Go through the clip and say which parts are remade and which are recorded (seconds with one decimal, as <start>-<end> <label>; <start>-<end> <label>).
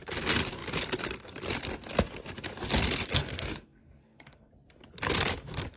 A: 0.0-3.1 recorded; 3.1-4.5 remade; 4.5-5.8 recorded